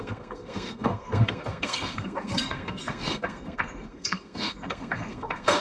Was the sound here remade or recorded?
remade